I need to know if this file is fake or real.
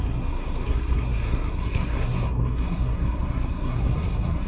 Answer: fake